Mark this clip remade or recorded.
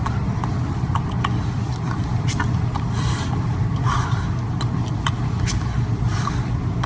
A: recorded